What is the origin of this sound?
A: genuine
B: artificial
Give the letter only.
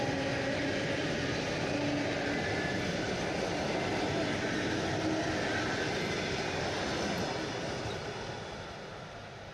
A